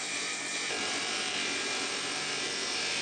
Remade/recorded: remade